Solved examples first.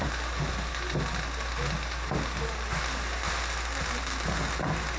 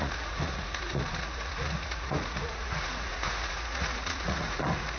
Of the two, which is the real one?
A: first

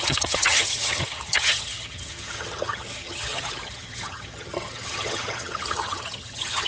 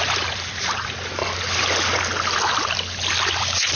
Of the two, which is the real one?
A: second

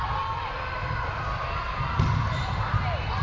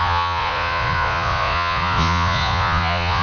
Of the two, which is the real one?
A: first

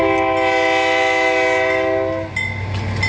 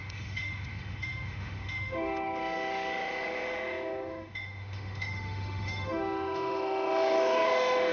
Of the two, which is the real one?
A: first